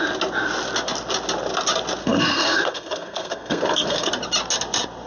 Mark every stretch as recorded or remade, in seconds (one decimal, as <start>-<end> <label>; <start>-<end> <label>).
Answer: 0.0-2.0 recorded; 2.0-4.1 remade; 4.1-5.1 recorded